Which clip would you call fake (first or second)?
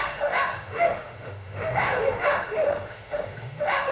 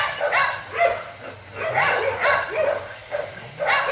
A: first